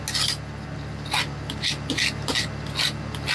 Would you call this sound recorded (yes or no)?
yes